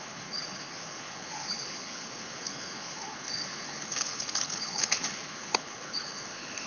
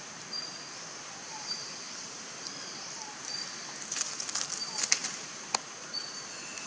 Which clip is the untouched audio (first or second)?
second